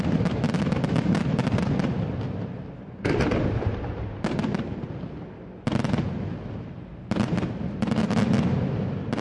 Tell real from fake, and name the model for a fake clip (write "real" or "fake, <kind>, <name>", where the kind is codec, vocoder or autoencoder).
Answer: real